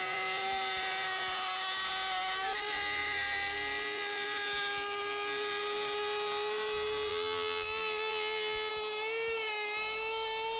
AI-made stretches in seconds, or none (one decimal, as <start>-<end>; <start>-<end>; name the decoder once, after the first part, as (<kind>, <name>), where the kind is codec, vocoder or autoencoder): 7.1-8.7 (vocoder, BigVGAN v2)